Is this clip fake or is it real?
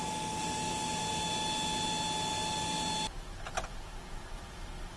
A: real